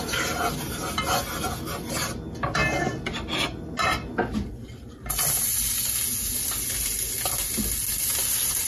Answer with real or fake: real